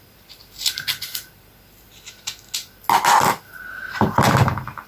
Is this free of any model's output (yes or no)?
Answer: yes